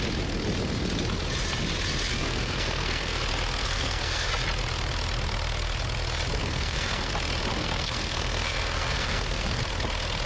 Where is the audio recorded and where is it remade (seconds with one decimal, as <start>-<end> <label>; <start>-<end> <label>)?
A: 0.0-2.1 recorded; 2.1-3.2 remade; 3.2-3.6 recorded; 3.6-4.3 remade; 4.3-6.4 recorded; 6.4-7.1 remade; 7.1-7.5 recorded; 7.5-9.6 remade; 9.6-10.3 recorded